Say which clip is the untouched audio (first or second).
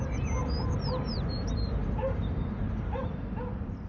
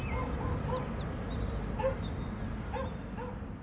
second